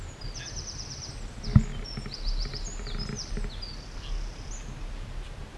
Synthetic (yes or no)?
no